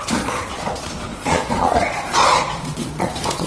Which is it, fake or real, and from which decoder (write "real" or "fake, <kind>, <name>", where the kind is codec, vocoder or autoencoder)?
fake, vocoder, Vocos